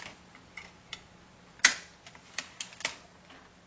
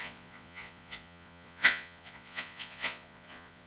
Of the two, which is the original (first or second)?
first